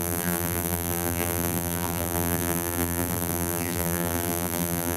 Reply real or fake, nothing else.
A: fake